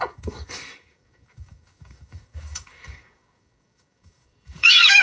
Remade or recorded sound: remade